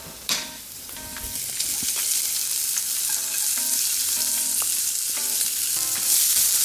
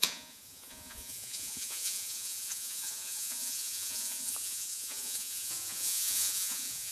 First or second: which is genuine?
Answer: first